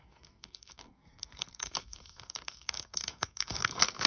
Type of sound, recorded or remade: remade